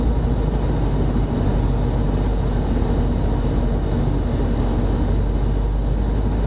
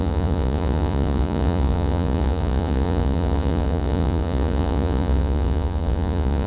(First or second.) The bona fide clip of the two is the first